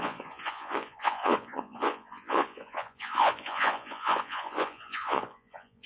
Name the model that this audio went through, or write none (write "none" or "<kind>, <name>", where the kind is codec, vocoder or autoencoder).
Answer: vocoder, Vocos